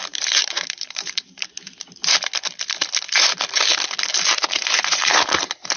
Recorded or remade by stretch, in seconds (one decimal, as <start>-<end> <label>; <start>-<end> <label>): 0.0-1.5 remade; 1.5-4.3 recorded; 4.3-5.8 remade